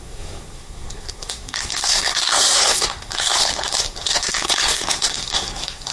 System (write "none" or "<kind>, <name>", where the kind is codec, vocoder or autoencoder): codec, SNAC